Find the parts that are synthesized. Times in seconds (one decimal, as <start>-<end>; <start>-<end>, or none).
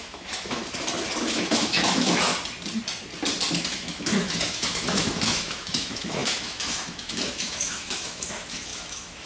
0.0-0.6; 1.3-2.3; 3.7-9.3